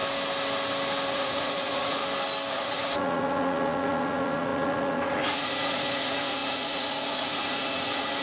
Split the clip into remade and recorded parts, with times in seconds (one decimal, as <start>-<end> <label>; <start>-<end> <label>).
0.0-1.1 recorded; 1.1-2.0 remade; 2.0-2.5 recorded; 2.5-8.2 remade